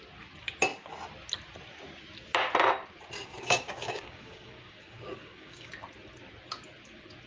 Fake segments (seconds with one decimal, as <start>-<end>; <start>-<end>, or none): 3.3-5.7